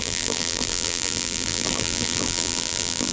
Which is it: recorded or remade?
remade